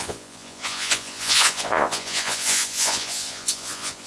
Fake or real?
fake